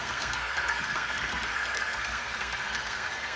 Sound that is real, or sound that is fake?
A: fake